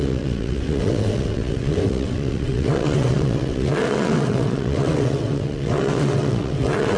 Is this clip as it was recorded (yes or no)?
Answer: no